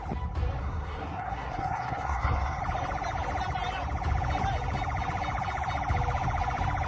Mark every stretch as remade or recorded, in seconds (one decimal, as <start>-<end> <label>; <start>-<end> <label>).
0.0-0.6 recorded; 0.6-2.6 remade; 2.6-6.9 recorded